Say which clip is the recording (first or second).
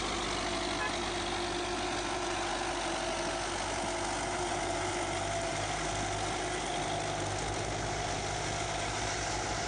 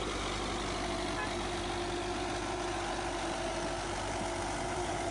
first